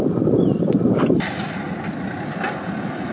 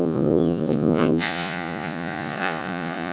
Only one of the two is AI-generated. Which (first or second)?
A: second